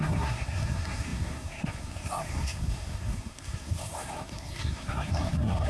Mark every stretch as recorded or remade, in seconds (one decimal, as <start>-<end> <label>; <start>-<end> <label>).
0.0-5.7 remade